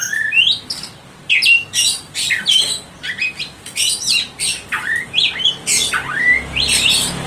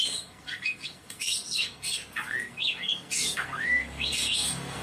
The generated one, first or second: second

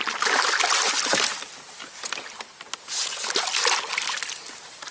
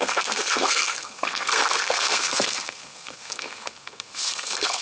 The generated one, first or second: second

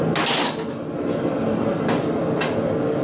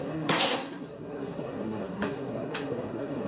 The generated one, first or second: second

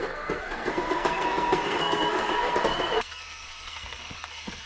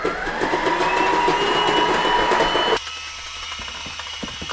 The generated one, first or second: first